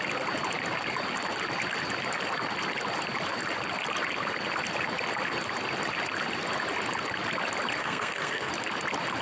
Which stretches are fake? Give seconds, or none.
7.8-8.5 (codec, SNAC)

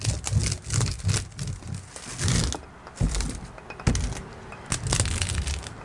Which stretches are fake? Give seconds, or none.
none

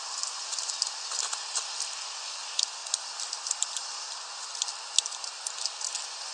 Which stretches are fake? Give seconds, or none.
none

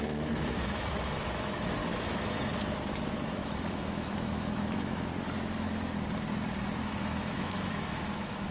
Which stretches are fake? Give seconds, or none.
0.0-1.8 (autoencoder, DAC-VAE); 3.2-5.1; 6.8-8.5

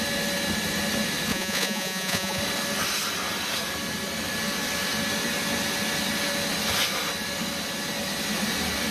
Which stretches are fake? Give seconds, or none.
1.3-2.4 (vocoder, Vocos)

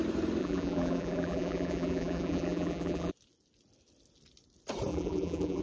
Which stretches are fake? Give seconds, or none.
0.4-3.1 (vocoder, BigVGAN v2); 4.9-5.6